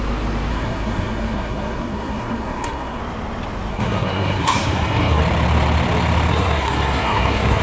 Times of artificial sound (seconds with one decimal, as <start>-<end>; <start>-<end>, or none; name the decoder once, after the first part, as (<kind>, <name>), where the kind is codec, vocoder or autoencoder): 0.5-3.0 (codec, SNAC); 3.7-5.2; 6.3-7.6